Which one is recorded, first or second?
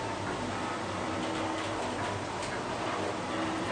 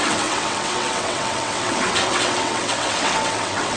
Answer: first